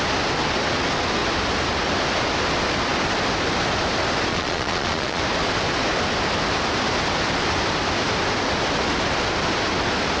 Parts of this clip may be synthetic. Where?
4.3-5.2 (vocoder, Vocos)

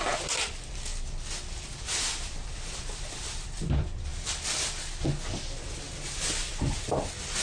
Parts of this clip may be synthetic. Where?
0.0-0.9 (vocoder, BigVGAN v2); 1.9-4.1; 6.2-7.4

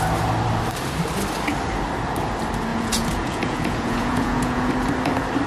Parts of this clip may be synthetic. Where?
2.7-4.7 (vocoder, Vocos)

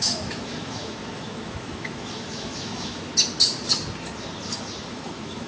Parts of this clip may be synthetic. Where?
0.0-3.1 (autoencoder, DAC-VAE); 4.9-5.5

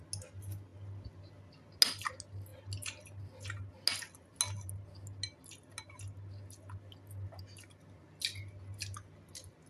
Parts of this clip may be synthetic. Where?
none

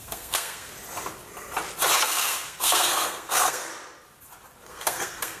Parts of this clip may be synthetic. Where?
0.0-0.7 (codec, SNAC); 2.0-3.7; 4.7-5.4

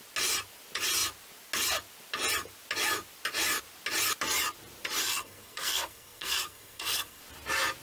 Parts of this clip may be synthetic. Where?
5.0-7.2 (codec, SNAC)

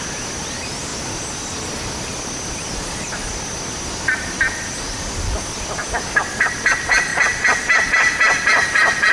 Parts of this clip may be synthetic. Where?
none